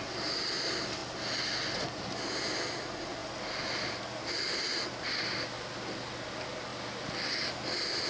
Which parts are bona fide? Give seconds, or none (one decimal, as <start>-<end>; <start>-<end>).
0.0-1.0; 2.1-3.2; 4.4-6.7